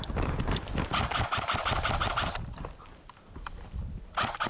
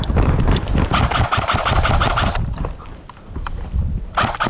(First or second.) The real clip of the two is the first